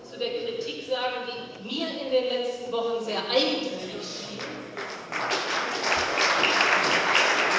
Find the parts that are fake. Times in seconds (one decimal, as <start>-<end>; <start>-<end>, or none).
0.4-3.2